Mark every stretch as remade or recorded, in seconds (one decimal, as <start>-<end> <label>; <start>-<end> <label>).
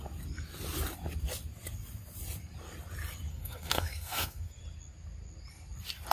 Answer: 0.0-3.3 recorded; 3.3-4.6 remade; 4.6-6.1 recorded